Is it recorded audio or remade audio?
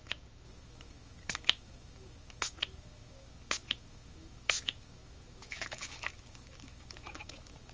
remade